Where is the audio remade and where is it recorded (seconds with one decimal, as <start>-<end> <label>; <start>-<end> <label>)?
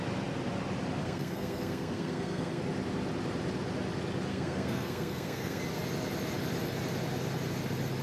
0.0-1.0 recorded; 1.0-2.6 remade; 2.6-4.3 recorded; 4.3-5.6 remade; 5.6-8.0 recorded